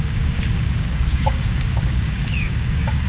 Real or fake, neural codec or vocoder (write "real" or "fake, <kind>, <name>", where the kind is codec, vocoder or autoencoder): fake, codec, DAC